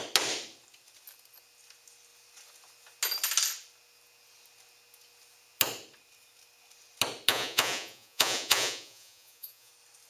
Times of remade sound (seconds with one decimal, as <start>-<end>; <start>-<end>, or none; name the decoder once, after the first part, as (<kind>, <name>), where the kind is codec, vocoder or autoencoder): 7.3-9.7 (vocoder, Vocos)